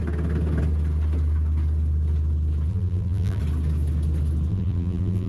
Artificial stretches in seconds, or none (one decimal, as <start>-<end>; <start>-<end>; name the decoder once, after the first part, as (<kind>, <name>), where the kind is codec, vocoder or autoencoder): 2.7-3.4 (vocoder, BigVGAN v2); 4.5-5.3